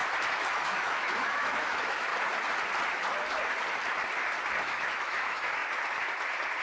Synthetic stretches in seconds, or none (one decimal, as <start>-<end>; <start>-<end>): 0.5-2.1; 4.6-5.6